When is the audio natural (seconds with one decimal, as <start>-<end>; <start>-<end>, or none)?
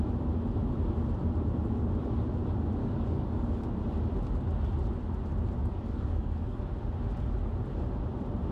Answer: 0.0-2.8; 3.7-5.6; 6.6-8.5